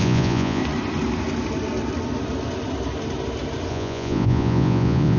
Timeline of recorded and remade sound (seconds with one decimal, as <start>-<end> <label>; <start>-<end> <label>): 0.0-0.6 remade; 0.6-3.7 recorded; 3.7-5.2 remade